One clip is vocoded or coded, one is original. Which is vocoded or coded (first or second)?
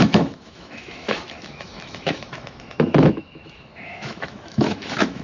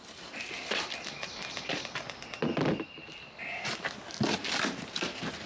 first